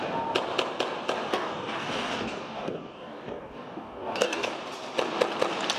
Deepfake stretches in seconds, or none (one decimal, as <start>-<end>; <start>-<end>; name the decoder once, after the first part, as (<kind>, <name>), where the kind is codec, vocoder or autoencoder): 1.3-4.5 (codec, DAC)